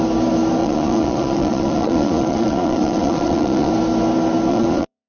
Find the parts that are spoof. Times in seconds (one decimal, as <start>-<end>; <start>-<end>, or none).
0.6-3.7; 4.5-5.1